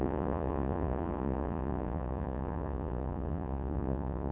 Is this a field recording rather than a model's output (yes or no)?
no